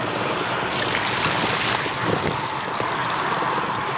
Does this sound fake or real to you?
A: real